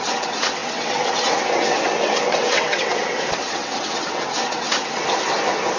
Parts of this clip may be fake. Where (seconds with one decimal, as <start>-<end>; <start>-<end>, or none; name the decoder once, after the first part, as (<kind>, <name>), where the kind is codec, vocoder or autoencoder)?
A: 0.0-5.0 (vocoder, WaveNeXt)